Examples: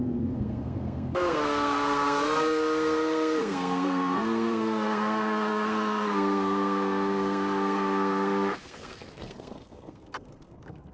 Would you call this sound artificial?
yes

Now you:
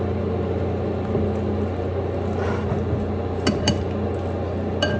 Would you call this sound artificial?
no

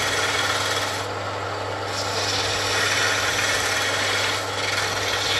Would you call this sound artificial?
no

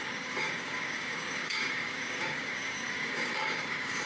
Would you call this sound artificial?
yes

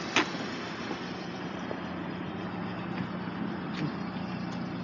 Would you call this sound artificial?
no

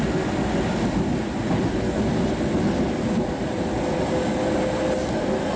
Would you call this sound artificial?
no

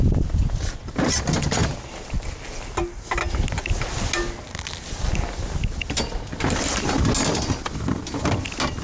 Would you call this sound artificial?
no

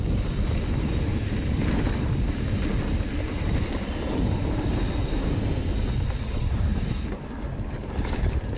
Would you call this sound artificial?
no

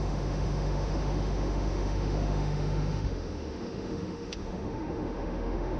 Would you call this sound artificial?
yes